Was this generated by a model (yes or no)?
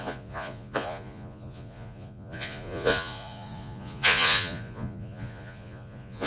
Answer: yes